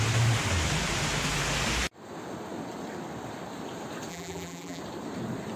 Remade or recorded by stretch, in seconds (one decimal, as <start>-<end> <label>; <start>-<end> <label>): 0.0-4.1 recorded; 4.1-4.8 remade; 4.8-5.6 recorded